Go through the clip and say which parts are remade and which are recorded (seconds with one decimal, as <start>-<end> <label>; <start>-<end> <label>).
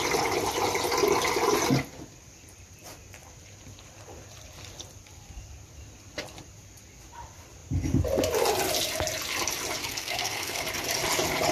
0.0-9.8 recorded; 9.8-10.6 remade; 10.6-11.5 recorded